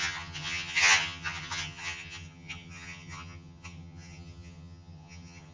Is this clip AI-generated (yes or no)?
yes